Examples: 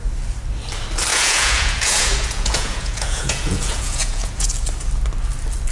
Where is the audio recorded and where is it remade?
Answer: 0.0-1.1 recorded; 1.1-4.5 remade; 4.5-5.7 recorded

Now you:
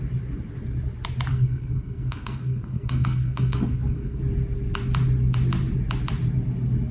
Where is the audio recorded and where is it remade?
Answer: 0.0-1.3 recorded; 1.3-4.2 remade; 4.2-6.9 recorded

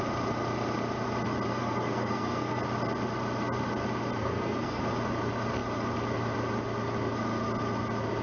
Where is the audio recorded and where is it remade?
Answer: 0.0-1.5 recorded; 1.5-2.6 remade; 2.6-4.2 recorded; 4.2-4.8 remade; 4.8-8.2 recorded